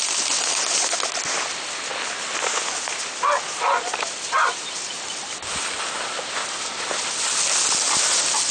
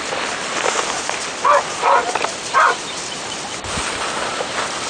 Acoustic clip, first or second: first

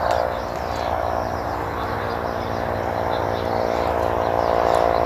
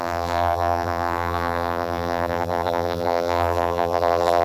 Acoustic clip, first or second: first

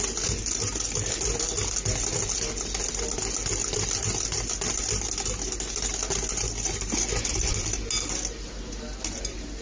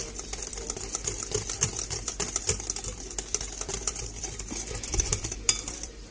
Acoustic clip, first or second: first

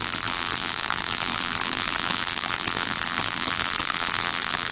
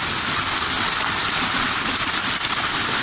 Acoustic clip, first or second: second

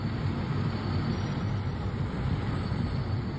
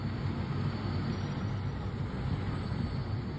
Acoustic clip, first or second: second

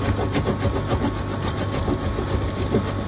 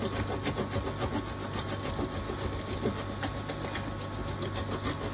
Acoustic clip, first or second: second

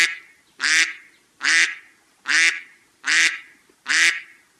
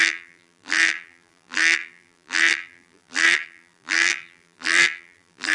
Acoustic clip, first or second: first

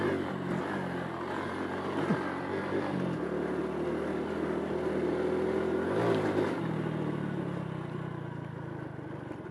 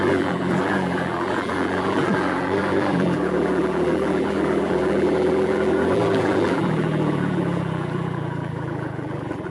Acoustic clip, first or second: first